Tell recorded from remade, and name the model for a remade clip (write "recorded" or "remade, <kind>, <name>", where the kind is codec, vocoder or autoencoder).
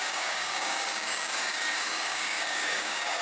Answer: remade, codec, DAC